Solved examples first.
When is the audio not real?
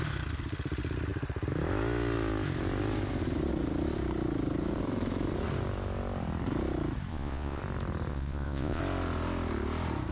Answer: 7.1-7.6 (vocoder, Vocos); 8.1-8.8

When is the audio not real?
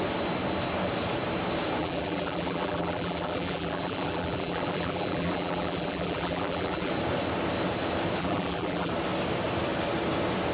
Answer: 1.8-6.9 (vocoder, BigVGAN v2); 8.2-8.9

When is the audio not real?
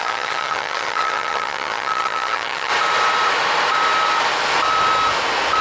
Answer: 0.0-2.7 (vocoder, HiFi-GAN)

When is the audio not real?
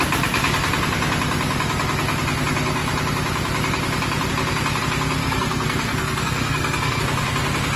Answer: 5.2-7.0 (codec, SNAC)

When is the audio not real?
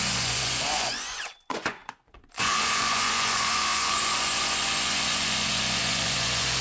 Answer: 0.0-6.6 (vocoder, Vocos)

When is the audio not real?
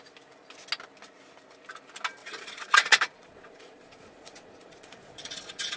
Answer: 2.2-5.8 (vocoder, Vocos)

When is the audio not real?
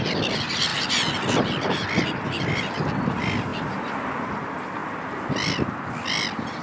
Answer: none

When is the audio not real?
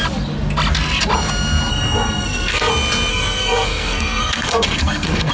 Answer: 1.7-2.7 (codec, SNAC); 3.1-5.3